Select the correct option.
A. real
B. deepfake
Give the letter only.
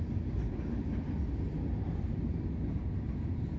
A